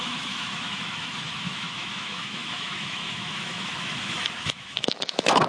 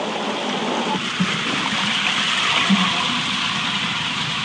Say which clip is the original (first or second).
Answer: second